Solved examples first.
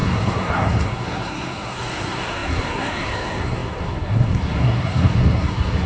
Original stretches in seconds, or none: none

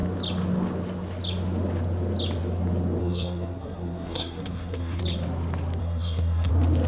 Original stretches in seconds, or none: 0.0-3.0; 5.0-5.8; 6.5-6.9

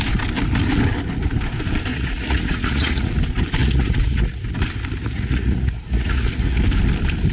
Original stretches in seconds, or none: 0.0-1.9; 3.1-3.6; 4.4-5.0; 6.6-7.3

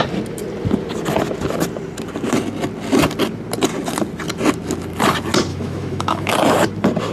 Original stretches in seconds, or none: 0.0-5.5; 6.3-7.1

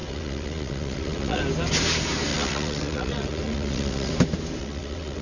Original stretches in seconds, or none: 1.4-2.3; 4.1-4.6

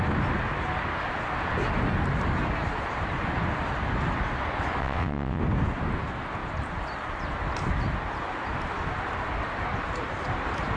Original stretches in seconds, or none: 0.0-4.8; 5.4-10.8